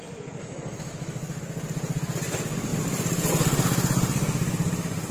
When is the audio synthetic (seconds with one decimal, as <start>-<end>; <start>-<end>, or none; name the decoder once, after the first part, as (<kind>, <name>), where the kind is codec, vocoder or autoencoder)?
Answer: 0.4-1.4 (autoencoder, DAC-VAE)